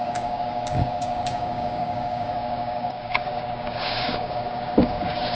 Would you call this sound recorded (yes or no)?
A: no